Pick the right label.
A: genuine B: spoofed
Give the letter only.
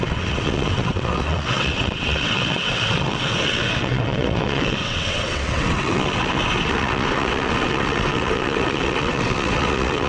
B